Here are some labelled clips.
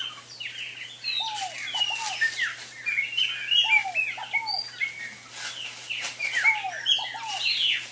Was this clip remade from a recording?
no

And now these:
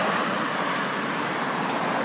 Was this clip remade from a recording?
yes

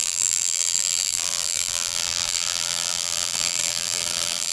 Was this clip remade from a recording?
yes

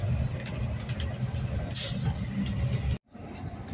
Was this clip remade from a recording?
no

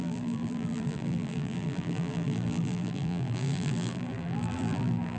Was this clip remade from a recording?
yes